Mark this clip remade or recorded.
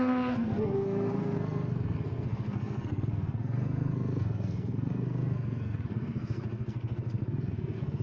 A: remade